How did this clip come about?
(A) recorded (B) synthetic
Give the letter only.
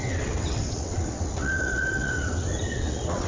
B